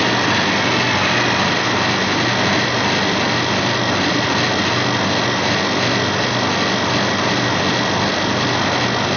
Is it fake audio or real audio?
real